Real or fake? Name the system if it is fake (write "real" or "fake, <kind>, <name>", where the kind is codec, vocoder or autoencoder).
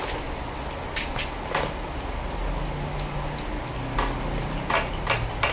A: real